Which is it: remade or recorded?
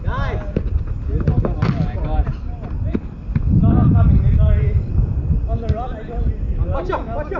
recorded